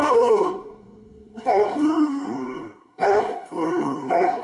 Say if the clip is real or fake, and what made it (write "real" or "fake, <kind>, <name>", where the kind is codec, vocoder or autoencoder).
fake, codec, SNAC